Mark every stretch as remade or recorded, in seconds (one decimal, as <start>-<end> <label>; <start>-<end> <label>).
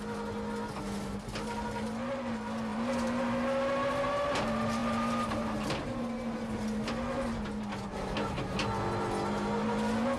0.0-2.7 recorded; 2.7-3.3 remade; 3.3-10.2 recorded